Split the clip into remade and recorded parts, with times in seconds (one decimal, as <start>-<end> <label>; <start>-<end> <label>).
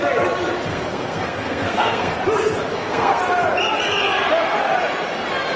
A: 0.0-0.7 recorded; 0.7-2.1 remade; 2.1-2.7 recorded; 2.7-3.2 remade; 3.2-5.6 recorded